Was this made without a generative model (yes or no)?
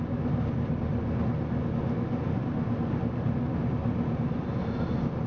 yes